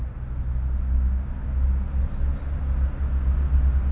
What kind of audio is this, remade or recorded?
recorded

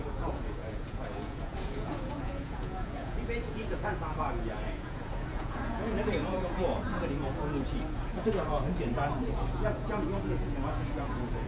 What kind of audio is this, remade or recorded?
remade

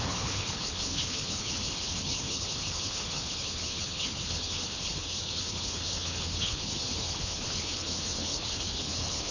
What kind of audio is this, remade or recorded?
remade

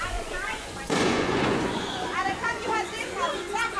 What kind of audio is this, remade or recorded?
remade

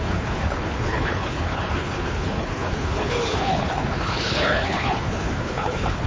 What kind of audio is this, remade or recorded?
remade